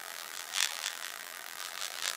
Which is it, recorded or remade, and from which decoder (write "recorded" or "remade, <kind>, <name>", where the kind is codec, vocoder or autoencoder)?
remade, vocoder, BigVGAN v2